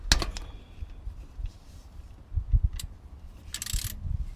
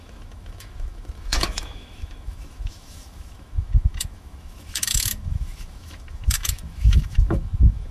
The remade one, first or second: second